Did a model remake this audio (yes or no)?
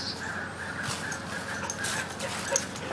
no